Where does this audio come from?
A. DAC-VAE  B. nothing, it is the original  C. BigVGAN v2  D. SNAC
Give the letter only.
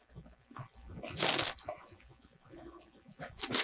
B